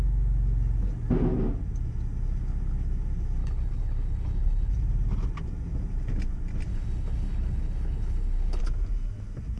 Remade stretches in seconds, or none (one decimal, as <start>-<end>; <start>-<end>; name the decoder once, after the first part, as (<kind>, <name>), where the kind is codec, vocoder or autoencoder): 3.4-4.7 (codec, HILCodec); 6.7-8.6